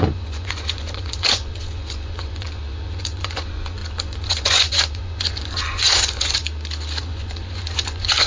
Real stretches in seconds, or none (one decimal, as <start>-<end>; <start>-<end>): 6.4-7.0